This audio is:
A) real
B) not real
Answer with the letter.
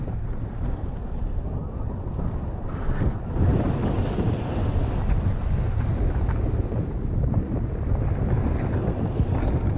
A